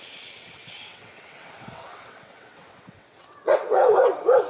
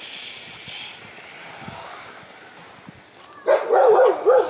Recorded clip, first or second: second